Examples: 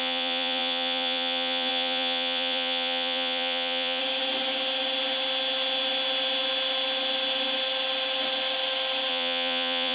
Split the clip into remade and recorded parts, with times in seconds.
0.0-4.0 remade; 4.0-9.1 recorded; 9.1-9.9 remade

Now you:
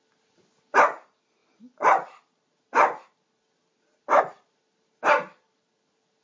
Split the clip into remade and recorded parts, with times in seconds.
0.0-6.2 recorded

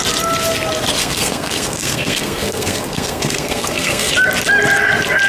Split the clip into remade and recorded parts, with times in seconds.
0.0-1.0 recorded; 1.0-4.1 remade; 4.1-5.3 recorded

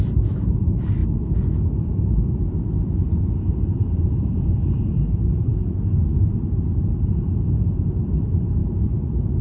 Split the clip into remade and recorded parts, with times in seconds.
0.0-1.0 remade; 1.0-1.8 recorded; 1.8-5.5 remade; 5.5-7.0 recorded; 7.0-9.4 remade

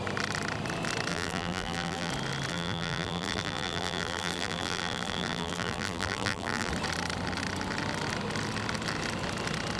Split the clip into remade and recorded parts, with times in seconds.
0.0-1.1 recorded; 1.1-2.1 remade; 2.1-2.5 recorded; 2.5-6.7 remade; 6.7-9.8 recorded